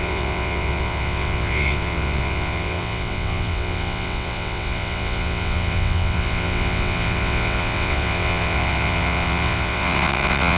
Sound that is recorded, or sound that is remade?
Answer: remade